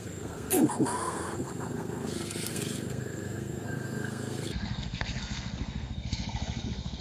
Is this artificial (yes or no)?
yes